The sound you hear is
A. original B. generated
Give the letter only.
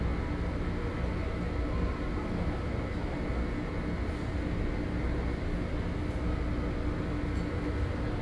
A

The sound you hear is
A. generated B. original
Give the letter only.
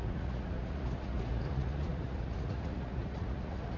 A